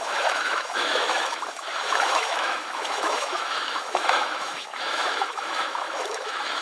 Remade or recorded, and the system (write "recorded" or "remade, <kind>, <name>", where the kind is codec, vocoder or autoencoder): remade, autoencoder, DAC-VAE